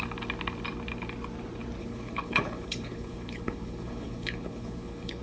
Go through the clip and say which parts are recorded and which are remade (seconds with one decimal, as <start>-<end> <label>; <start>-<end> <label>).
0.0-1.8 recorded; 1.8-5.2 remade